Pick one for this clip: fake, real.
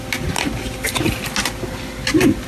real